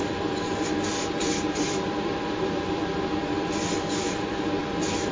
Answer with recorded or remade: remade